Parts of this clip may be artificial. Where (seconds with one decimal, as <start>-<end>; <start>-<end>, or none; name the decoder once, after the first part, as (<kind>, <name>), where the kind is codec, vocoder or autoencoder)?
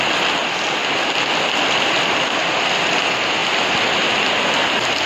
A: none